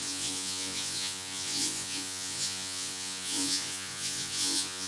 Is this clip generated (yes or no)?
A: yes